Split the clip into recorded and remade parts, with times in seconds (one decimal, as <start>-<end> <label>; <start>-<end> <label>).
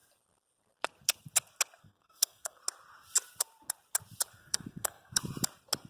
0.0-1.8 recorded; 1.8-2.6 remade; 2.6-4.4 recorded; 4.4-5.2 remade; 5.2-5.9 recorded